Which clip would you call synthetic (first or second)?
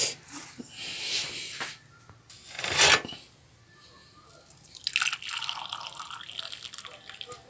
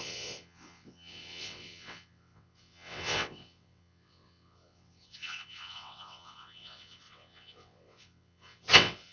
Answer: second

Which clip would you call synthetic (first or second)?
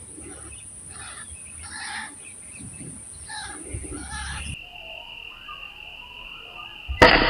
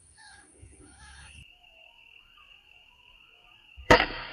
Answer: second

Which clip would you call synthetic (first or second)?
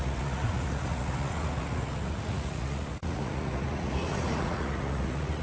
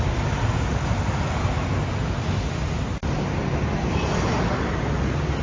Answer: first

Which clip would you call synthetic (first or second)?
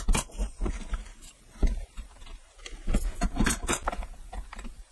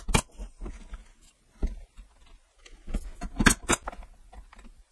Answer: first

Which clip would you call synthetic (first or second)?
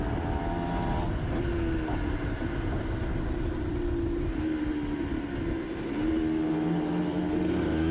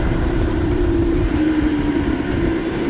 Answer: second